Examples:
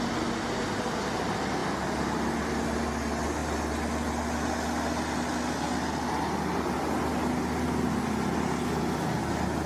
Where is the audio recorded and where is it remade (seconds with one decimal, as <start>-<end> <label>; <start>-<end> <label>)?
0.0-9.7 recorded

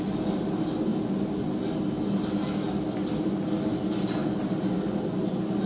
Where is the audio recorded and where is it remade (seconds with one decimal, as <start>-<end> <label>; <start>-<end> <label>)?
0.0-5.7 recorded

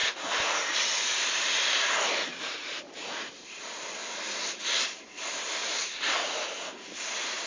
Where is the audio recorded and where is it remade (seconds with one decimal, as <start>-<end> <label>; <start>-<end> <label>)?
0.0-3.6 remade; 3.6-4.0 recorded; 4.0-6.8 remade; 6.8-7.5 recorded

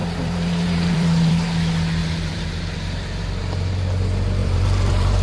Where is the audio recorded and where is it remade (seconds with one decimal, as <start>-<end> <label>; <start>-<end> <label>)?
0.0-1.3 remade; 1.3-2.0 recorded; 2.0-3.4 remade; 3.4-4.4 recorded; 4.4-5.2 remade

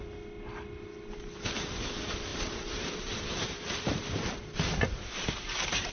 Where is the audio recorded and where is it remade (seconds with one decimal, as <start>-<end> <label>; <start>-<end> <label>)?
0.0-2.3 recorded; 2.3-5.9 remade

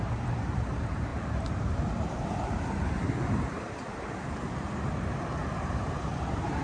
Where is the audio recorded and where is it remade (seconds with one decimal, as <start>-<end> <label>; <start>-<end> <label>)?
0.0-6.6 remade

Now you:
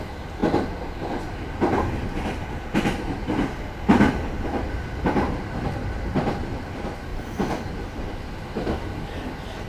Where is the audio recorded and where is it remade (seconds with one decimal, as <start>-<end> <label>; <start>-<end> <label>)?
0.0-7.1 recorded; 7.1-8.1 remade; 8.1-9.7 recorded

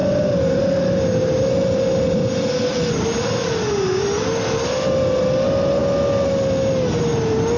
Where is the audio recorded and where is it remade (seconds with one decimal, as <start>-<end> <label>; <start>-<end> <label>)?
0.0-7.6 recorded